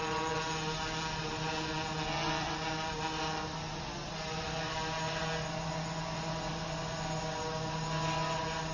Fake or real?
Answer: real